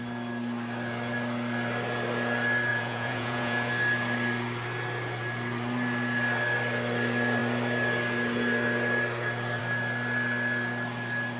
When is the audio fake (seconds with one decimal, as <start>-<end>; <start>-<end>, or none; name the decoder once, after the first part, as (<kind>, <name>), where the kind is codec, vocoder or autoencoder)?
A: 2.7-3.7 (vocoder, Vocos)